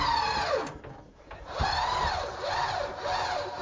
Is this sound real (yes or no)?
yes